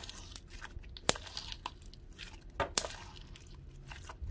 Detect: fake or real real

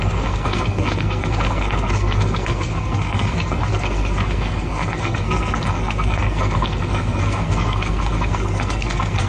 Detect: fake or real fake